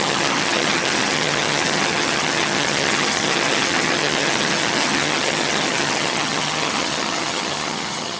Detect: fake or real fake